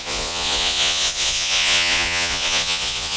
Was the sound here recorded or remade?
remade